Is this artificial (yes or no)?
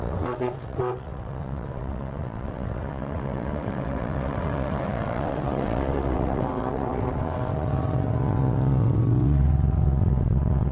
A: yes